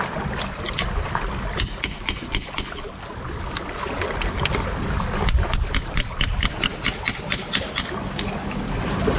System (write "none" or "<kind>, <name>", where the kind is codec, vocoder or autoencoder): none